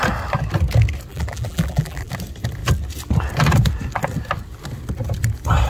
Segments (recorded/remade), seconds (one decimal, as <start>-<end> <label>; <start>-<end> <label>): 0.0-1.1 recorded; 1.1-2.1 remade; 2.1-5.7 recorded